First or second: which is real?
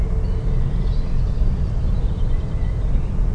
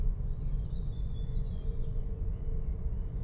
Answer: first